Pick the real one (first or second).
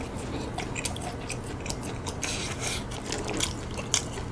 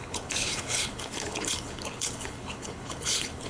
first